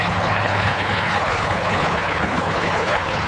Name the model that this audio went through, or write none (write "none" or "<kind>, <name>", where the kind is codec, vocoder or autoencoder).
codec, HILCodec